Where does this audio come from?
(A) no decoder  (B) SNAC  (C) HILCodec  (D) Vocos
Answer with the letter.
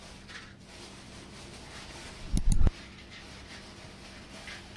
A